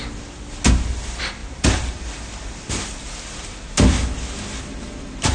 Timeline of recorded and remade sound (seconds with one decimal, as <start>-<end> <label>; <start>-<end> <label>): 0.0-5.3 recorded